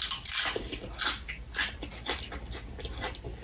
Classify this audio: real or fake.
real